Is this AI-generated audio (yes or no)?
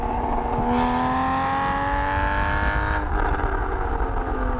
no